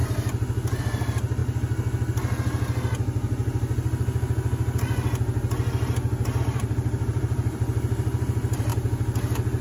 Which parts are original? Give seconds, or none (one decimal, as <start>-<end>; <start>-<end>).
0.0-0.8; 1.4-6.4; 8.7-9.6